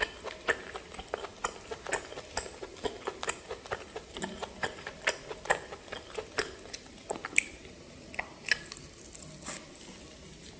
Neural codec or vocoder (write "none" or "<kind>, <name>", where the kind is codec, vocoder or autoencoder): none